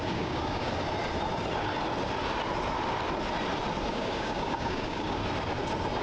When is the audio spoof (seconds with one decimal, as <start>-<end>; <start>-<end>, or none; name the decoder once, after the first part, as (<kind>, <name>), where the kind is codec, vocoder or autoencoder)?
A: 0.0-0.7 (codec, DAC); 3.9-5.2